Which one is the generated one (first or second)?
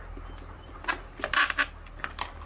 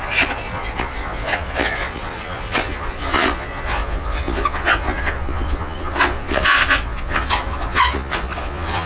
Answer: second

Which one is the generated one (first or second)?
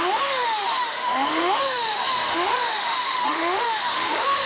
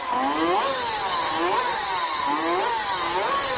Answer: first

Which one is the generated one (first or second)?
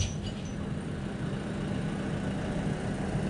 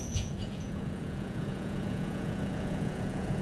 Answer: second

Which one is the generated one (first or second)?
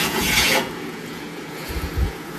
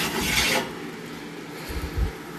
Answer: first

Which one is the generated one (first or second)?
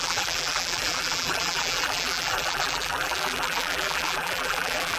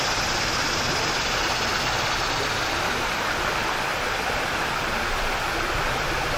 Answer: first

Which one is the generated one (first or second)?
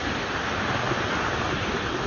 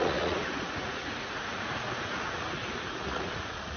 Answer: second